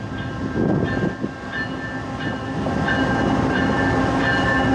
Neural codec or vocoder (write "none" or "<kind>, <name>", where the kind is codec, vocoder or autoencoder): none